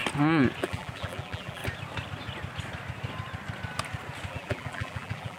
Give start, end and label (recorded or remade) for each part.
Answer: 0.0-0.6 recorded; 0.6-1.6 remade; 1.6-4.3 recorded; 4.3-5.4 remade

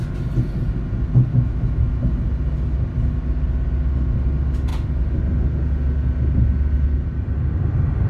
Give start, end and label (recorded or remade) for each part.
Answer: 0.0-1.3 recorded; 1.3-2.0 remade; 2.0-8.1 recorded

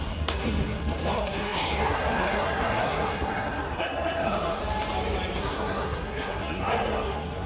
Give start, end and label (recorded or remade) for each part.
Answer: 0.0-4.6 remade; 4.6-5.4 recorded; 5.4-7.5 remade

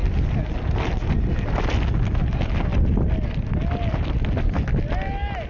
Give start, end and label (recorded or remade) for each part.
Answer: 0.0-5.5 recorded

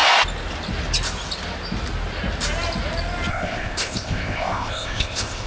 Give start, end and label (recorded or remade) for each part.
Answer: 0.0-3.3 recorded; 3.3-5.5 remade

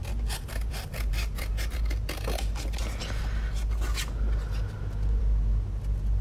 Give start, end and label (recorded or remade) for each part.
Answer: 0.0-1.1 recorded; 1.1-1.8 remade; 1.8-6.2 recorded